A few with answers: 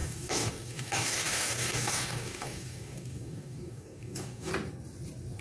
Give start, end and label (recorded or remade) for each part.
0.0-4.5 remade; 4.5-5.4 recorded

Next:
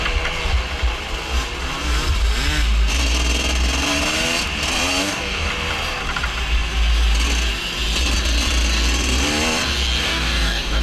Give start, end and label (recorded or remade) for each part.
0.0-5.0 recorded; 5.0-5.5 remade; 5.5-10.0 recorded; 10.0-10.8 remade

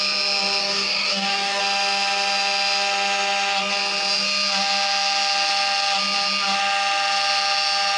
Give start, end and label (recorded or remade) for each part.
0.0-0.6 recorded; 0.6-1.6 remade; 1.6-8.0 recorded

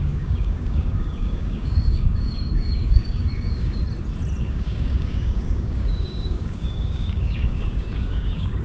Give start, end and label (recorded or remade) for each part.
0.0-3.8 remade; 3.8-4.4 recorded; 4.4-8.6 remade

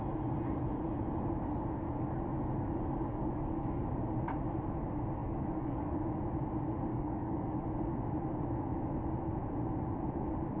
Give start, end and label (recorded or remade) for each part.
0.0-3.1 recorded; 3.1-3.8 remade; 3.8-5.2 recorded; 5.2-6.0 remade; 6.0-6.9 recorded; 6.9-7.5 remade; 7.5-10.6 recorded